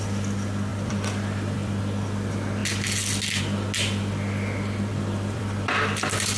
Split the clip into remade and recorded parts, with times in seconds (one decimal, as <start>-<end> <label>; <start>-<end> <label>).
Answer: 0.0-0.7 recorded; 0.7-1.8 remade; 1.8-4.9 recorded; 4.9-6.4 remade